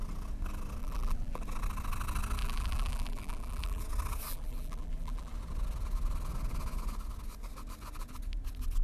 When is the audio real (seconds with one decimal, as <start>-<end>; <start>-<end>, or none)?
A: 0.0-0.8; 1.4-2.4; 3.8-4.3; 5.3-8.8